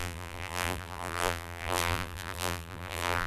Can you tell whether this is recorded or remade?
remade